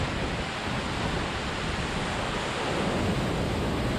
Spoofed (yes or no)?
no